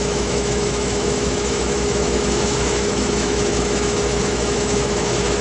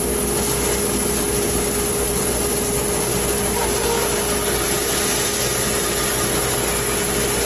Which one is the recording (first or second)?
second